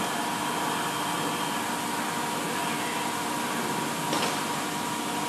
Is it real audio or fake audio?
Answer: real